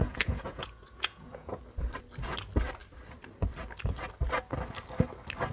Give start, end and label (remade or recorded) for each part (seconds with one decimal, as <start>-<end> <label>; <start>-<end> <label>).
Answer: 0.0-1.6 remade; 1.6-5.5 recorded